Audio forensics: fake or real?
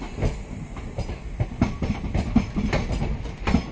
real